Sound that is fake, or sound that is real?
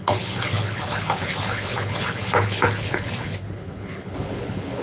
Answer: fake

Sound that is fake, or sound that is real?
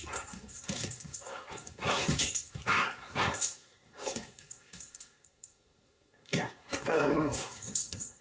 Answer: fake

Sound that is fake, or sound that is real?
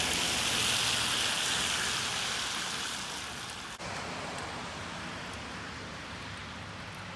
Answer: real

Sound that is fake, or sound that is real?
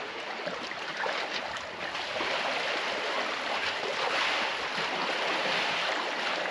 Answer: real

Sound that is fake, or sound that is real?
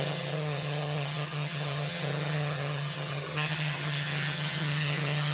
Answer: fake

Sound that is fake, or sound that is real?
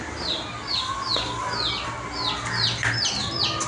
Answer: real